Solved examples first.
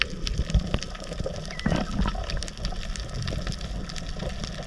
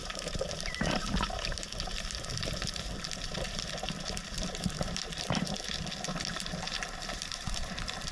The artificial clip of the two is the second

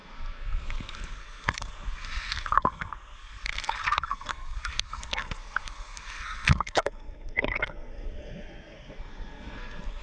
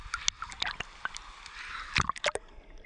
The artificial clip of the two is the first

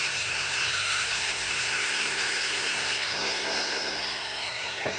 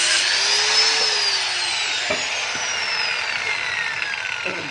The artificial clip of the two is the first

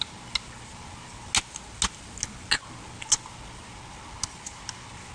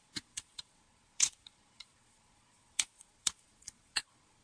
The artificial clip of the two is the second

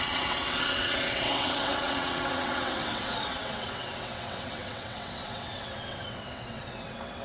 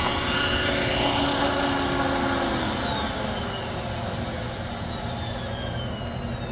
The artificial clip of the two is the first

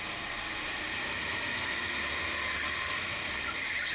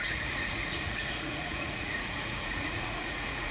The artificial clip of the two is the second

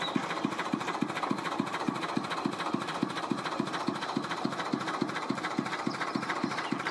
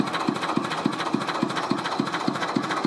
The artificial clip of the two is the first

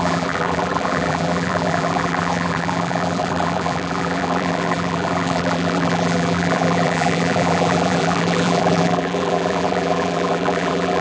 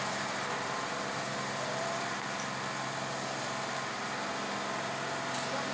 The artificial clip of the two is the first